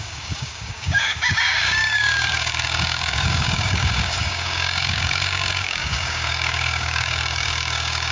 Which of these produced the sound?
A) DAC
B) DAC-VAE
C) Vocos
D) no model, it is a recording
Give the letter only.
A